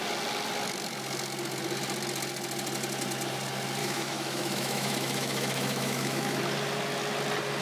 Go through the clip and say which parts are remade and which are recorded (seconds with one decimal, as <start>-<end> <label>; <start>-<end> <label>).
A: 0.0-3.8 recorded; 3.8-6.4 remade; 6.4-7.6 recorded